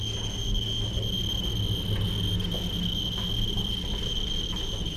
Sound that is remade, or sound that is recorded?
recorded